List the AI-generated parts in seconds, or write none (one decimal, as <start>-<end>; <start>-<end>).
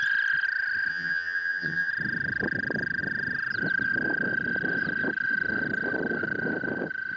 0.9-1.9